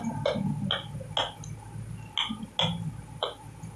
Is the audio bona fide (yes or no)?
yes